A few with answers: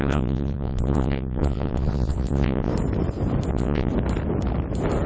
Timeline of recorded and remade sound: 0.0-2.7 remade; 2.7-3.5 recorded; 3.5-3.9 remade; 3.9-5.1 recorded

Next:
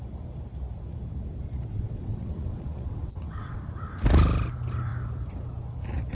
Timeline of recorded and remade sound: 0.0-1.7 recorded; 1.7-3.6 remade; 3.6-6.1 recorded

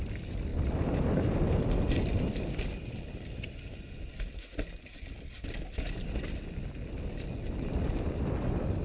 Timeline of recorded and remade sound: 0.0-8.8 recorded

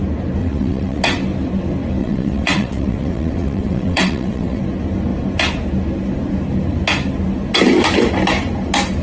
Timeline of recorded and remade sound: 0.0-0.4 recorded; 0.4-1.0 remade; 1.0-2.0 recorded; 2.0-4.6 remade; 4.6-9.0 recorded

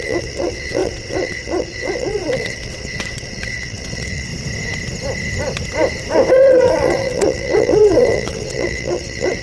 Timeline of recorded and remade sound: 0.0-4.3 remade; 4.3-6.3 recorded; 6.3-9.4 remade